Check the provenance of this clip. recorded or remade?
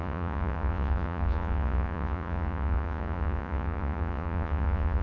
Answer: remade